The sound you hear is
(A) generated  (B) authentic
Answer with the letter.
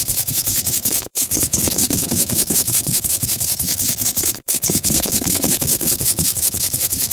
A